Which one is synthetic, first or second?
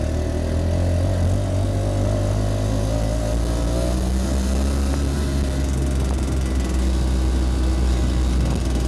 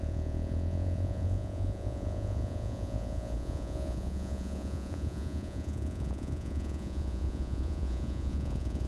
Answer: second